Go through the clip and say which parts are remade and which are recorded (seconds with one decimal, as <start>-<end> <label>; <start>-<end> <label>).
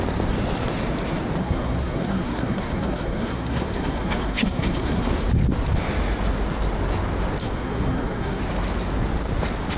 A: 0.0-1.4 recorded; 1.4-5.1 remade; 5.1-7.4 recorded; 7.4-8.4 remade; 8.4-9.8 recorded